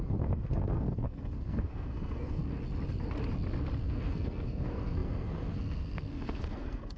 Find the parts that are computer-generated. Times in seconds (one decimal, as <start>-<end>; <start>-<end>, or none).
0.0-2.4; 3.8-7.0